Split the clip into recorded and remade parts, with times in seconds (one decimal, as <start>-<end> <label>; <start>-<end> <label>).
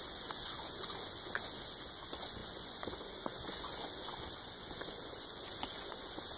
0.0-6.4 remade